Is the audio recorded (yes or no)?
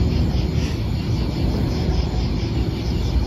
yes